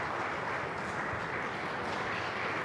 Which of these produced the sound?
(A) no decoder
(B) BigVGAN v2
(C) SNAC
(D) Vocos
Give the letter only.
A